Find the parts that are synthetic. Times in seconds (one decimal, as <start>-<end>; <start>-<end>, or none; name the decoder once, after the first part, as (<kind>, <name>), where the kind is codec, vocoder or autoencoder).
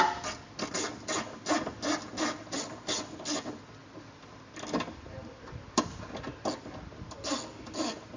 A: none